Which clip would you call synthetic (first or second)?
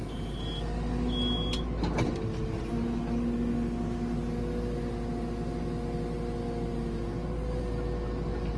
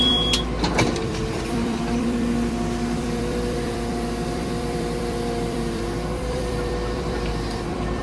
second